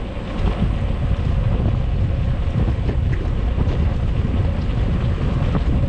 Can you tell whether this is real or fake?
real